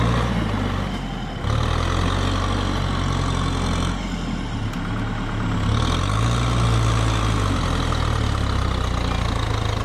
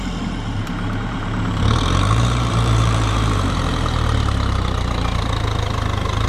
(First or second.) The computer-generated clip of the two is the second